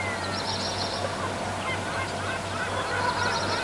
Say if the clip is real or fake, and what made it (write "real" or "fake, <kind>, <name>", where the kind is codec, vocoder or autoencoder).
real